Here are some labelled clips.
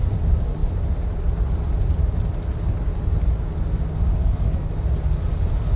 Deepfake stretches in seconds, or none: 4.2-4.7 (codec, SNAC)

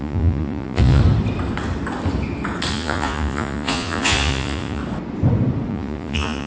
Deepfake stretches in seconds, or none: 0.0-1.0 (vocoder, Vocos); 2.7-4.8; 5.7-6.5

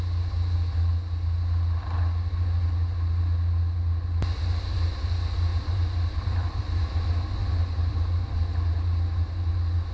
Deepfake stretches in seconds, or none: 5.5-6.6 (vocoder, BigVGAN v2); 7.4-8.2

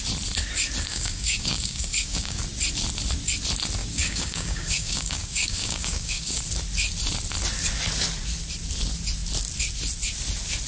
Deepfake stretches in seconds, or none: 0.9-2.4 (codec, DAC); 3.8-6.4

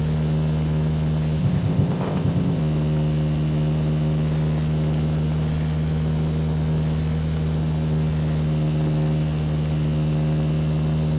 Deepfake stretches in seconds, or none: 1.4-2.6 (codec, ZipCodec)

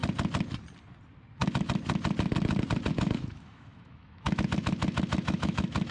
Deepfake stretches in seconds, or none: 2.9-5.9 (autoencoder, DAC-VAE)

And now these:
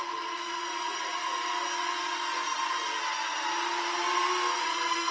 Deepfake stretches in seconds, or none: none

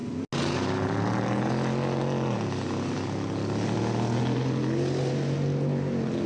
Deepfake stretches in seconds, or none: none